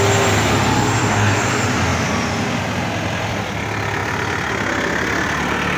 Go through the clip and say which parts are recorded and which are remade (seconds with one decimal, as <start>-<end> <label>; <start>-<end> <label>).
0.0-1.0 recorded; 1.0-1.5 remade; 1.5-5.8 recorded